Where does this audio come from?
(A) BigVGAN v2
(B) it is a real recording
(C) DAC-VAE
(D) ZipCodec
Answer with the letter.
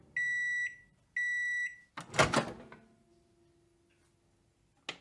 B